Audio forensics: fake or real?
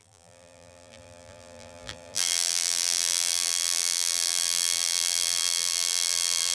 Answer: fake